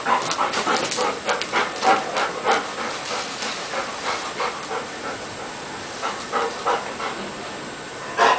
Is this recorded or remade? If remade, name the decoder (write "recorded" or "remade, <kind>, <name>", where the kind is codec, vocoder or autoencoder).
recorded